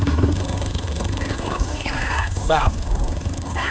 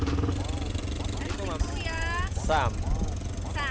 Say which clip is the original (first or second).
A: second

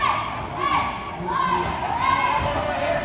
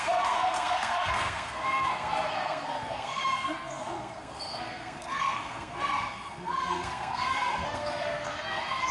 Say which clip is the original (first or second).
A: first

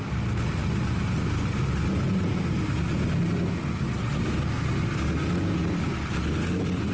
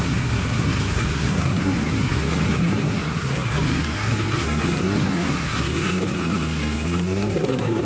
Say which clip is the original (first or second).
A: first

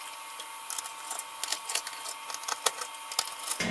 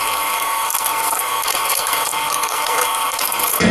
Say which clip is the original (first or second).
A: first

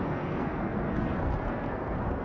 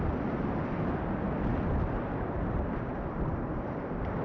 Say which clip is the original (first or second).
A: second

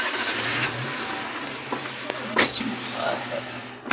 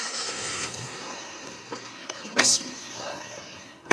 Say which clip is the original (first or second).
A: first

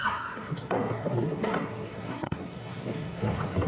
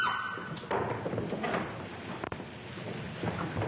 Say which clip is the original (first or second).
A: second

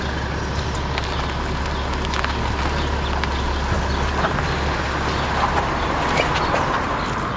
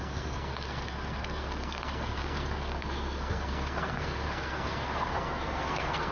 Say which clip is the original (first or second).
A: first